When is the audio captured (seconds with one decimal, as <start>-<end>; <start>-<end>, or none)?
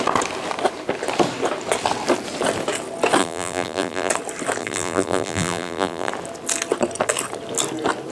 0.0-3.2; 4.1-4.6; 6.1-8.1